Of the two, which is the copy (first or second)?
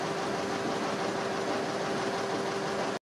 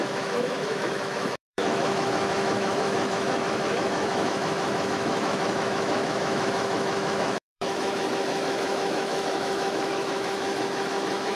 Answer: second